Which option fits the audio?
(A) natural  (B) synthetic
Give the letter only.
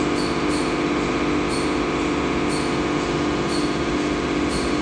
A